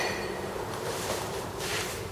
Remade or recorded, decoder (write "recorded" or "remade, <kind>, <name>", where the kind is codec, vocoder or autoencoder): remade, vocoder, BigVGAN v2